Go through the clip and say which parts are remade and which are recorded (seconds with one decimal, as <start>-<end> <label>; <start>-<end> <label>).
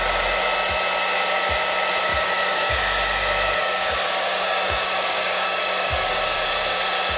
0.0-2.1 recorded; 2.1-2.7 remade; 2.7-3.6 recorded; 3.6-6.2 remade; 6.2-7.2 recorded